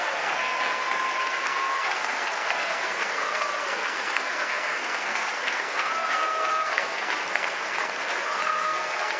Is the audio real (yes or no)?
no